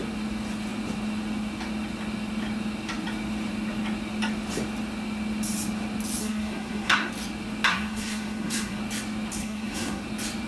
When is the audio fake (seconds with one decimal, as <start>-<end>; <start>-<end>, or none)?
6.2-7.1; 7.7-8.8; 9.4-10.0